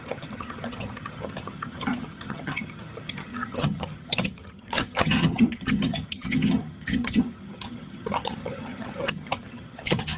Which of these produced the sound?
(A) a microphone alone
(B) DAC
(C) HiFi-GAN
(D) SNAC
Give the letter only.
C